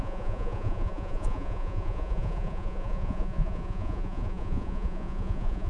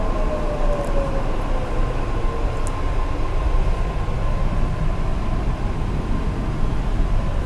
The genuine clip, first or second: second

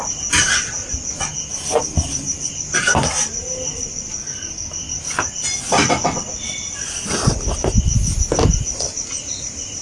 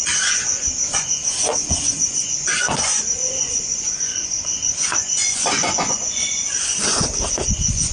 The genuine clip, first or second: first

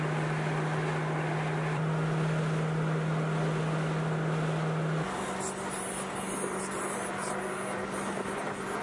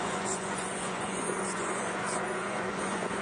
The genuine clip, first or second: first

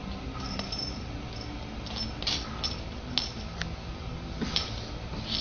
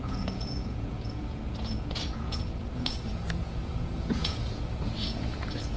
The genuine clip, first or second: first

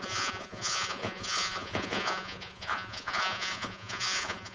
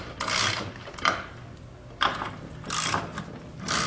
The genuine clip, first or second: second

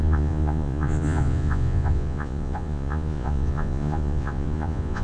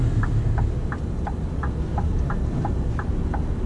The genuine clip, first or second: second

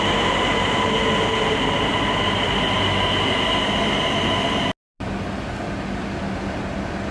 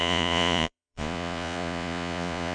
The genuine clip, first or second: first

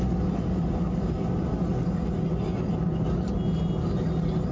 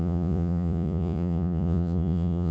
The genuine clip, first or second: first